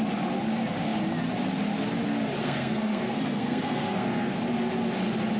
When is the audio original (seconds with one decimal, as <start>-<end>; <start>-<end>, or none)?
0.0-2.4; 4.4-5.4